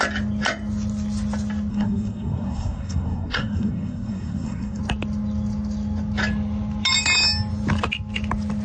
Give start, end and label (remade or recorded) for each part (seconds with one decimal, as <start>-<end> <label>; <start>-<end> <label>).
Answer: 0.0-1.7 recorded; 1.7-4.8 remade; 4.8-8.6 recorded